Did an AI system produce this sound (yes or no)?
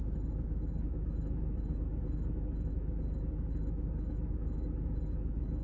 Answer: yes